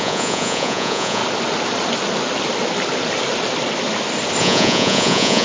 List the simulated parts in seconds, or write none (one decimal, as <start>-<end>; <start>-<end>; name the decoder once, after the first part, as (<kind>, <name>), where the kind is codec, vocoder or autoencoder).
0.0-1.2 (vocoder, Vocos); 4.4-5.4